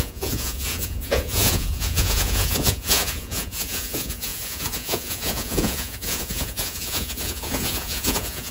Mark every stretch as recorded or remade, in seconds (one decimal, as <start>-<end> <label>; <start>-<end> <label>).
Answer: 0.0-8.5 remade